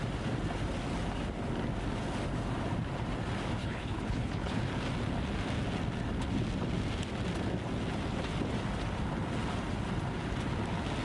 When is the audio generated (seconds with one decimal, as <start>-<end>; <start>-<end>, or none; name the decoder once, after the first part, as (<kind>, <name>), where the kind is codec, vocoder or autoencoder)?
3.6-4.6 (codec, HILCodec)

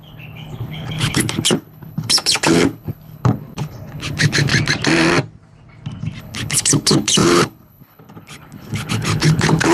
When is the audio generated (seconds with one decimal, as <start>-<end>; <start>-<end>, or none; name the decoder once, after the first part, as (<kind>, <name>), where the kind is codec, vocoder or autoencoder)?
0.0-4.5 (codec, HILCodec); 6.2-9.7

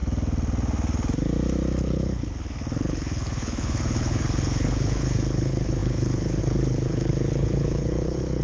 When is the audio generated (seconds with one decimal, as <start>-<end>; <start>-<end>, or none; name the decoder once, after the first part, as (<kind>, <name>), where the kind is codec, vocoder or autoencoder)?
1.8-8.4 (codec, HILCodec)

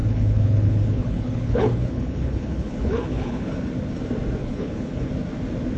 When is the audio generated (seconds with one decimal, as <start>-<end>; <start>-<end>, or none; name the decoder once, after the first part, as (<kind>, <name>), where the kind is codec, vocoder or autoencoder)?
0.0-3.5 (codec, HILCodec); 4.4-5.1

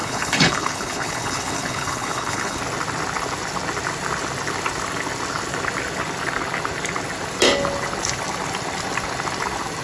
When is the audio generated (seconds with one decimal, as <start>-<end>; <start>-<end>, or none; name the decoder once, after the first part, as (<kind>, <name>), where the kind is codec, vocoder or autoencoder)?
0.0-2.6 (codec, HILCodec)